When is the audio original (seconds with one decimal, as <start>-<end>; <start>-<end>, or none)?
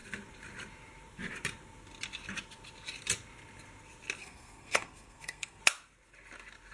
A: 0.0-4.2; 5.6-6.7